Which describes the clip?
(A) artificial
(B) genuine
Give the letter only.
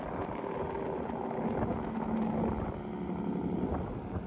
B